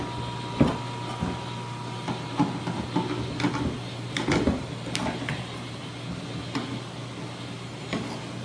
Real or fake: real